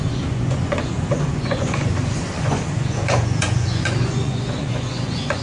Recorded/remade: remade